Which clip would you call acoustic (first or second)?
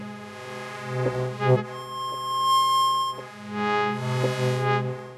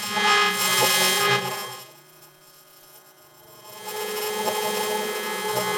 first